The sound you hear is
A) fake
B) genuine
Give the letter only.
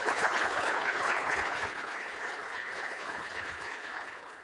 A